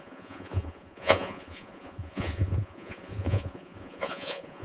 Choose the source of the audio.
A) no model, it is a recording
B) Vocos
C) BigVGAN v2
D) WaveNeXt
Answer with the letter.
B